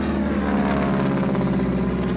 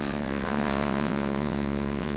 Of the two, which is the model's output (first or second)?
second